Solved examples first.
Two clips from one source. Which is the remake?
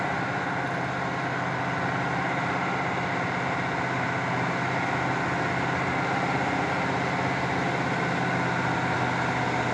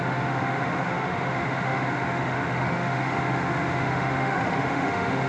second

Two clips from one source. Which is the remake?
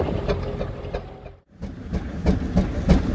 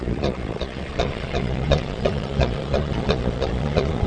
second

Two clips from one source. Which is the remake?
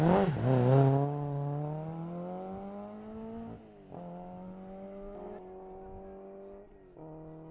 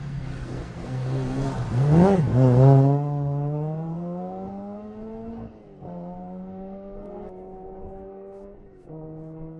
second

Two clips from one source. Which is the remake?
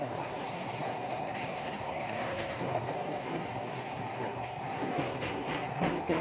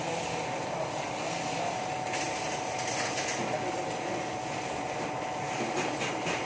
first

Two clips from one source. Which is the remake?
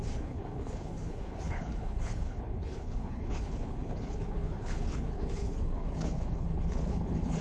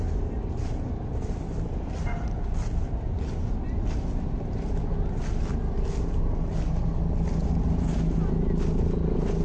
first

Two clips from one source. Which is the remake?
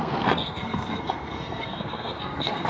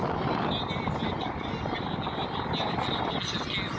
first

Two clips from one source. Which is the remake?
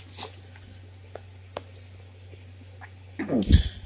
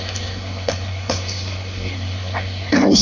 second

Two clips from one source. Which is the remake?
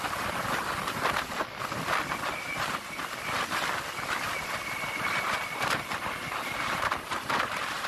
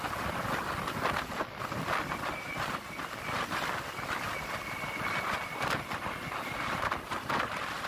first